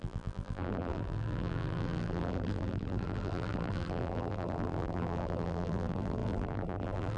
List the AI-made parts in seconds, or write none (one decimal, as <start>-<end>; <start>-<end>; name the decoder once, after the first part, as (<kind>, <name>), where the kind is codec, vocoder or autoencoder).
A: 0.0-7.2 (vocoder, BigVGAN v2)